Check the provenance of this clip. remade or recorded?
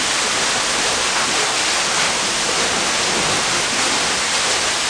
recorded